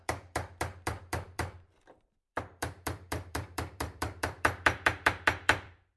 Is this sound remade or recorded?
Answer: remade